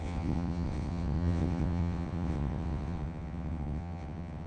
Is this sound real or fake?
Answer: fake